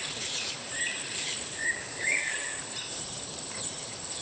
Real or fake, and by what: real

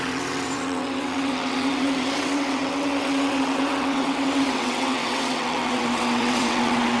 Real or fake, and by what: fake, vocoder, WaveNeXt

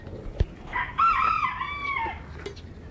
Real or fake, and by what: real